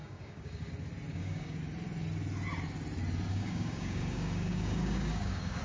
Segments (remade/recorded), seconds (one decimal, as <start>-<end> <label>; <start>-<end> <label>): 0.0-0.7 remade; 0.7-1.1 recorded; 1.1-1.6 remade; 1.6-3.3 recorded; 3.3-5.6 remade